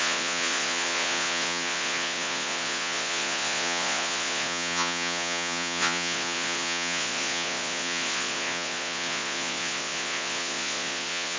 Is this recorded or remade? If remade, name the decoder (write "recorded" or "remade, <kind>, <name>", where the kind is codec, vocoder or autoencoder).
remade, vocoder, Vocos